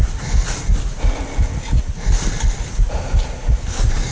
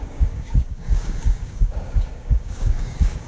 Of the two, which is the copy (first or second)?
second